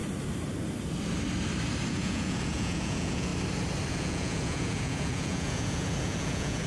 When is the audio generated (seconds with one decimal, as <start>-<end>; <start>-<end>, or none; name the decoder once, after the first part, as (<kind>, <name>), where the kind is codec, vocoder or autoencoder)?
1.9-3.3 (vocoder, Vocos); 3.9-6.7

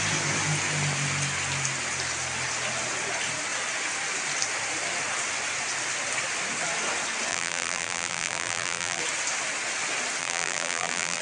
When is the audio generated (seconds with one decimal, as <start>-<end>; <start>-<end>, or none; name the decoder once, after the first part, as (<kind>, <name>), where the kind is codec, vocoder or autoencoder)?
7.3-9.0 (vocoder, BigVGAN v2); 10.2-11.2

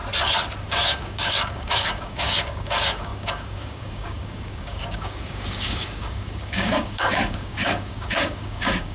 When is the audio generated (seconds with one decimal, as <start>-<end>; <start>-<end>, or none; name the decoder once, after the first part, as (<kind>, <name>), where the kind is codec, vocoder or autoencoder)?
0.7-8.9 (codec, DAC)

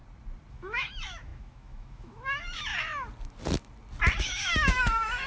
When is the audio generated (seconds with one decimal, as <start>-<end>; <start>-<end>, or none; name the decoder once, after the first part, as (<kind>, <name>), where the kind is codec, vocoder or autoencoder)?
0.5-2.7 (autoencoder, DAC-VAE); 4.2-5.3

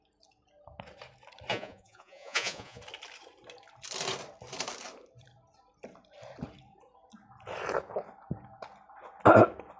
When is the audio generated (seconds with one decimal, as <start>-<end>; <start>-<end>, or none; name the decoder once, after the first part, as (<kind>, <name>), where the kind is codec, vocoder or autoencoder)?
1.5-2.8 (vocoder, Vocos)

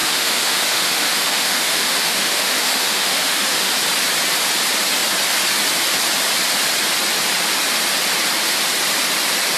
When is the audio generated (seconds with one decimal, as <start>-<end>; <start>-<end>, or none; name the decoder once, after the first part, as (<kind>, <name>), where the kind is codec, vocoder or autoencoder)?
0.0-3.7 (autoencoder, DAC-VAE)

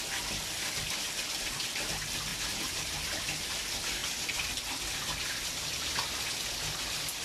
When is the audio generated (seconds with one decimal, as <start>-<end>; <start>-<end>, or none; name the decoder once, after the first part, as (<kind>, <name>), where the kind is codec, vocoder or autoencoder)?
2.3-3.2 (vocoder, BigVGAN v2)

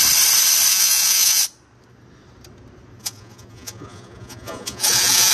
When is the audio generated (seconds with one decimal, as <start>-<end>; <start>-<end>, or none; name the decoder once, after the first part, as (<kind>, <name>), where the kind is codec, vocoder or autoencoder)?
0.7-1.4 (vocoder, Vocos); 3.0-5.3